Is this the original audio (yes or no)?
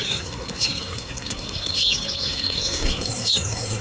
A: no